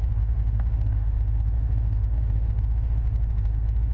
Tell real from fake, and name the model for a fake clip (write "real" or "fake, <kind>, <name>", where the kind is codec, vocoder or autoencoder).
fake, autoencoder, DAC-VAE